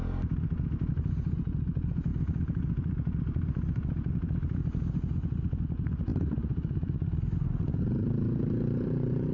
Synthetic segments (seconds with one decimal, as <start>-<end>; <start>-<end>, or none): 0.9-4.6; 5.6-9.3